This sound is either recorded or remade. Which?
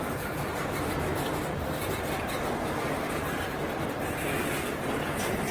recorded